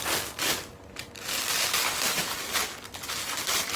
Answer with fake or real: real